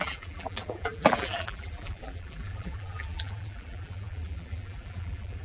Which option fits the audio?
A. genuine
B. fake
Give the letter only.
B